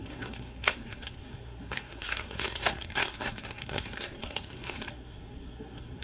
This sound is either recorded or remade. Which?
remade